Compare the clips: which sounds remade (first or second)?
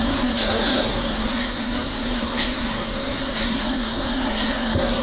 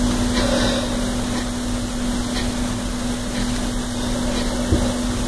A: first